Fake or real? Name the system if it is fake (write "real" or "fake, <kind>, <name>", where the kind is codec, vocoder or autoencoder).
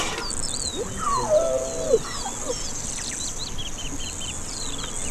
real